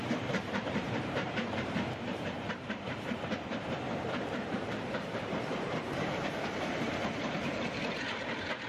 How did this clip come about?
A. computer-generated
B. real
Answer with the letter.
A